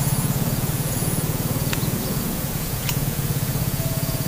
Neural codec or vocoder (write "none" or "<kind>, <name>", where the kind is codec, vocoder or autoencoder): vocoder, Vocos